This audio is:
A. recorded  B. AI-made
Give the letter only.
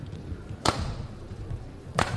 B